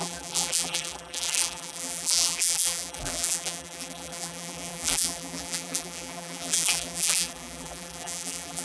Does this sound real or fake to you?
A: fake